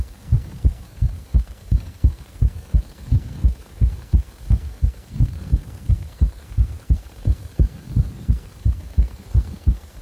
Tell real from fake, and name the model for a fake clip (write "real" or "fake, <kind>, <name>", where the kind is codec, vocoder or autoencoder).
fake, codec, SNAC